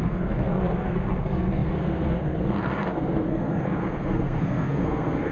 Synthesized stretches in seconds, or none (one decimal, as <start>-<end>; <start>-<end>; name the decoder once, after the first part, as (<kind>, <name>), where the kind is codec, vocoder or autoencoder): 0.0-5.3 (codec, SNAC)